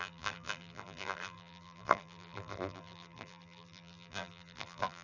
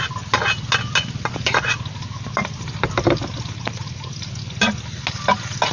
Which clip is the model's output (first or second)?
first